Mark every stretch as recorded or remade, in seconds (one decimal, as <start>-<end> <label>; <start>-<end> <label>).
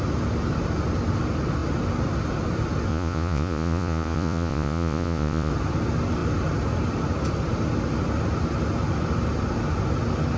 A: 0.0-2.9 recorded; 2.9-5.5 remade; 5.5-10.4 recorded